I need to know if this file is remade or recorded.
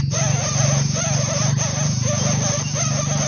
recorded